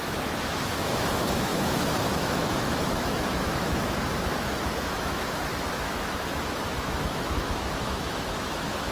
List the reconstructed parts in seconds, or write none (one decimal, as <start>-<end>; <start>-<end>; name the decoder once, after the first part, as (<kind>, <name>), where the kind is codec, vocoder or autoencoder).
0.0-8.9 (autoencoder, DAC-VAE)